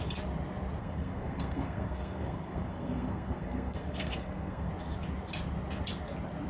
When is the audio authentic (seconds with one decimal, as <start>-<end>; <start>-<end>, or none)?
0.0-0.8; 4.7-6.5